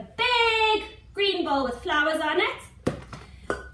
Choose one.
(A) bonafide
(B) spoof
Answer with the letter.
B